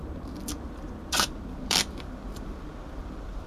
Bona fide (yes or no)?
no